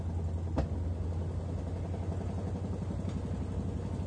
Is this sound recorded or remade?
recorded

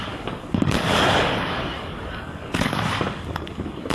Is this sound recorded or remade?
remade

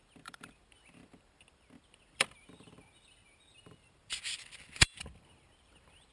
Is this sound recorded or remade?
remade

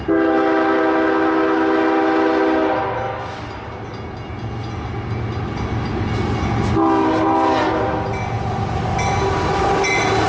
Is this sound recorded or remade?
recorded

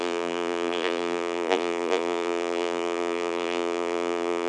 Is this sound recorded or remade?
remade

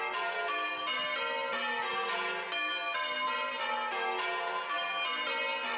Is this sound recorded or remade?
recorded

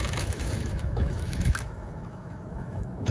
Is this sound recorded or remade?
remade